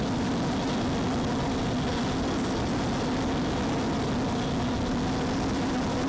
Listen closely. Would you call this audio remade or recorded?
recorded